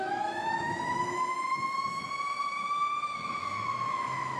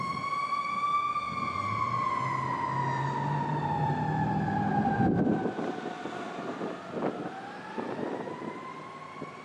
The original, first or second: second